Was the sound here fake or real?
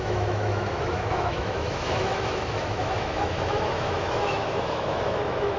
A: fake